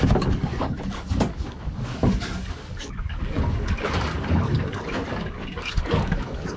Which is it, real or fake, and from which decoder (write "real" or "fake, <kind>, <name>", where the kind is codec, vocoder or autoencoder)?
fake, codec, DAC